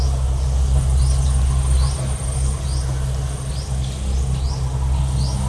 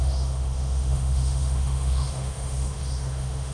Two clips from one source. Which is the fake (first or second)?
second